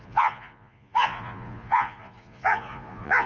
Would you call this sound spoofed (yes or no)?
yes